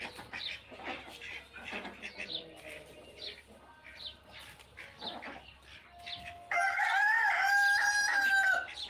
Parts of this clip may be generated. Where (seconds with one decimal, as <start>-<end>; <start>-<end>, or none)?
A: 6.2-7.2